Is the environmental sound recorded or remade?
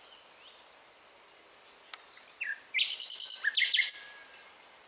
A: recorded